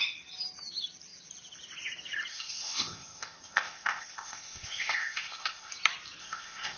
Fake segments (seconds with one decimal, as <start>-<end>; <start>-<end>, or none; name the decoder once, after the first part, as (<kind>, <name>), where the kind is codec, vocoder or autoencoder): 2.3-5.7 (codec, ZipCodec); 6.2-6.8